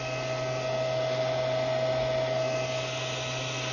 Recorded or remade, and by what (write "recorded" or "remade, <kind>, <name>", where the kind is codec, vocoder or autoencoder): recorded